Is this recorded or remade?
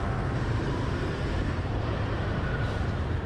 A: remade